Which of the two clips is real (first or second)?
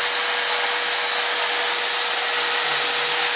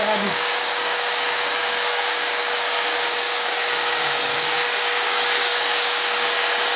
first